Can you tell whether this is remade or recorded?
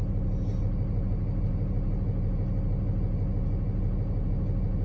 recorded